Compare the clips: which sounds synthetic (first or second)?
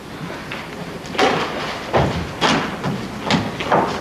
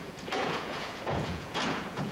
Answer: second